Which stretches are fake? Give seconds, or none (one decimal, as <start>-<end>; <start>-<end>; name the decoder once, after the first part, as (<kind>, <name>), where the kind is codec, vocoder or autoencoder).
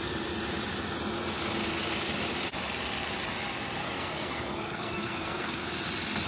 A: 3.8-5.7 (codec, SNAC)